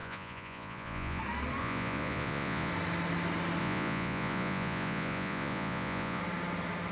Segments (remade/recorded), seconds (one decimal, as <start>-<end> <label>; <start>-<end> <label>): 0.0-1.2 remade; 1.2-1.6 recorded; 1.6-2.7 remade; 2.7-3.6 recorded; 3.6-6.2 remade; 6.2-6.9 recorded